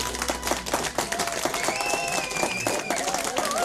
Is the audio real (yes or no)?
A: yes